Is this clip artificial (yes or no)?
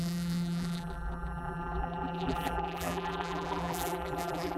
yes